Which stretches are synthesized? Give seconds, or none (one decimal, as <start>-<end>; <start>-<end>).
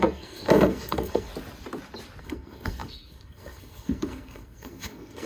0.0-1.3; 2.2-5.3